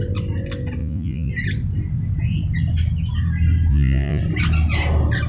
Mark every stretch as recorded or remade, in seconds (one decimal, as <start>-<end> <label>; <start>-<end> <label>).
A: 0.0-0.8 recorded; 0.8-1.3 remade; 1.3-3.7 recorded; 3.7-4.2 remade; 4.2-5.3 recorded